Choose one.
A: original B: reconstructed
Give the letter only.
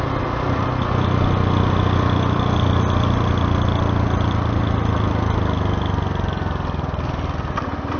A